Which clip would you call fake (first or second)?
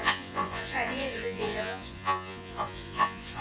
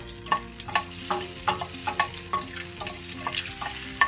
first